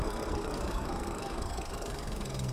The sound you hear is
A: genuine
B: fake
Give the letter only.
B